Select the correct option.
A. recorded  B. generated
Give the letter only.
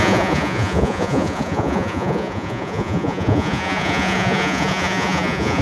B